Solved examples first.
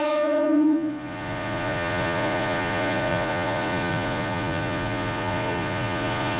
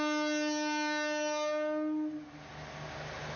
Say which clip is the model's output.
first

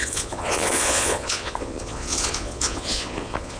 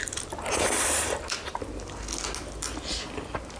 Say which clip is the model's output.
first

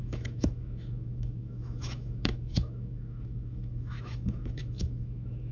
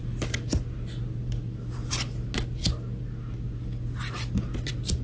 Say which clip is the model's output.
first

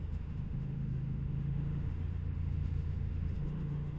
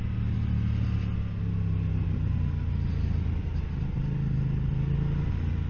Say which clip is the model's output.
first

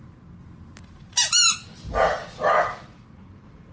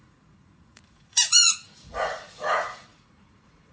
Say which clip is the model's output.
second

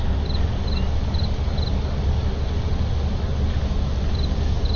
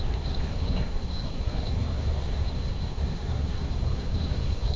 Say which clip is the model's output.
second